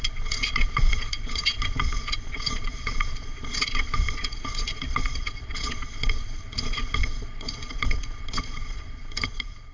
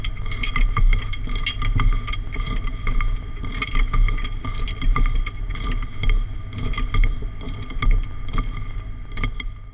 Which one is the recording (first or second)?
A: second